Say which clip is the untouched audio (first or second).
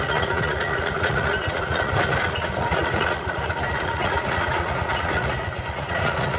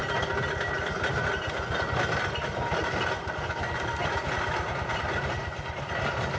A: second